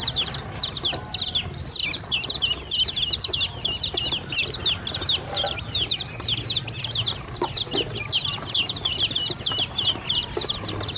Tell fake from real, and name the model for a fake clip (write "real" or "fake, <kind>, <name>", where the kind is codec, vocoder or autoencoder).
real